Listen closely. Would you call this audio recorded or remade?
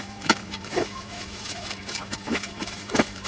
remade